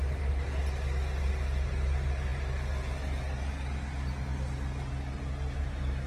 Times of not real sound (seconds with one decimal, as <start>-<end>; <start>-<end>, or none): none